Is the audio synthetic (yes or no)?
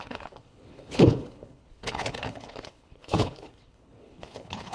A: yes